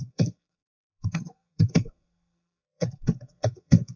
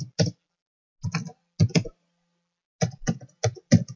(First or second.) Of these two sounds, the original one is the second